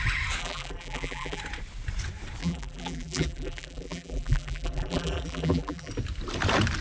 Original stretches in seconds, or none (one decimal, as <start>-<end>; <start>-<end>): 0.0-0.4; 1.4-2.4; 5.9-6.8

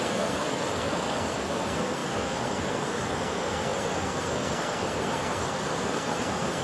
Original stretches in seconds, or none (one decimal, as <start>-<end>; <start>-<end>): none

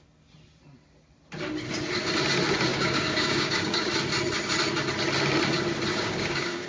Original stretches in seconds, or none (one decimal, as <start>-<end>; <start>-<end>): 0.0-2.7; 3.9-5.9